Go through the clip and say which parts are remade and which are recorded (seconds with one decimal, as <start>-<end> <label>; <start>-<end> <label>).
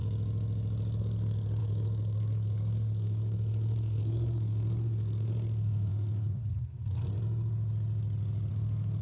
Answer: 0.0-1.0 recorded; 1.0-7.2 remade; 7.2-8.5 recorded; 8.5-9.0 remade